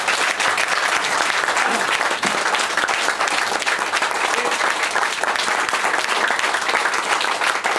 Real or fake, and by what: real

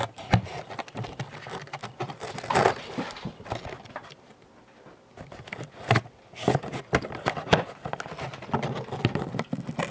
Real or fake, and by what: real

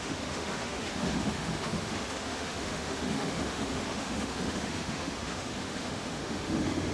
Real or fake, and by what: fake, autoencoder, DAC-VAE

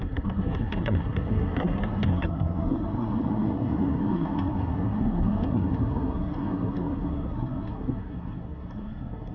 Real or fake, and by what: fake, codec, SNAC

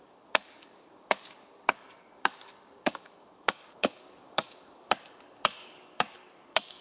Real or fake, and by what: fake, codec, DAC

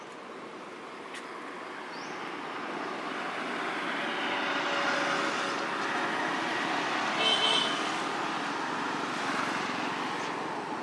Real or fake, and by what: real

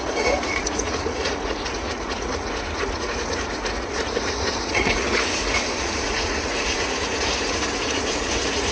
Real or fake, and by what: fake, vocoder, Vocos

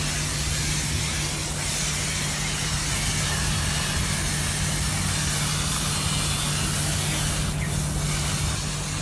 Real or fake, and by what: real